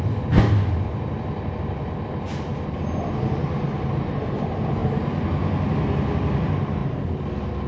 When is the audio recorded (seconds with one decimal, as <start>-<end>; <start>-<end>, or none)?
0.0-7.7